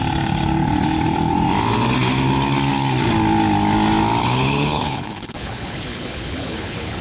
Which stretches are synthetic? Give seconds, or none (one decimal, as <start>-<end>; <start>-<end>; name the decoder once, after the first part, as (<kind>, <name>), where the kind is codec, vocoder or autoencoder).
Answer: 4.2-7.0 (codec, HILCodec)